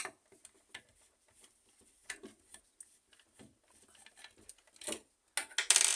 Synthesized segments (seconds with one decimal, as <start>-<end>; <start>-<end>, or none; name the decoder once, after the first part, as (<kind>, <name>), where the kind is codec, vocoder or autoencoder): none